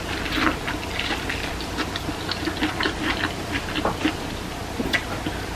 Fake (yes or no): no